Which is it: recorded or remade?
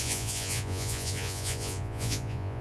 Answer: remade